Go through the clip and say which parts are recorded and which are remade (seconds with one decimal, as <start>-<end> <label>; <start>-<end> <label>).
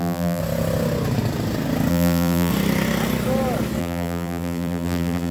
0.0-0.4 remade; 0.4-1.9 recorded; 1.9-2.5 remade; 2.5-3.8 recorded; 3.8-5.3 remade